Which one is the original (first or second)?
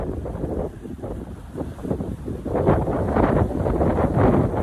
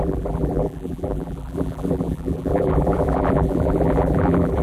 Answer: first